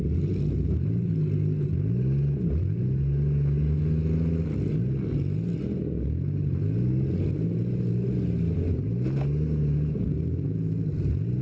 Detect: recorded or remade recorded